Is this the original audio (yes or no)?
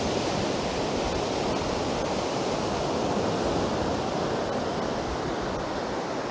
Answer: yes